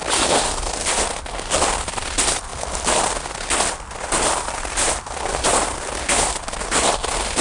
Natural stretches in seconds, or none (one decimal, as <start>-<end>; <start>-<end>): 0.0-7.4